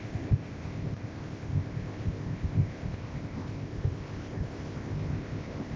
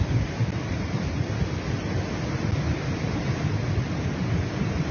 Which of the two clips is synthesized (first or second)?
first